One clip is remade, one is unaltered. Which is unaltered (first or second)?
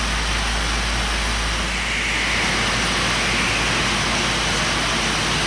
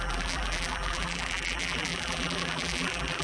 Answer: first